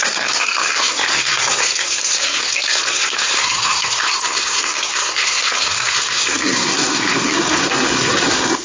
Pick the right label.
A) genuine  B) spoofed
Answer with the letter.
B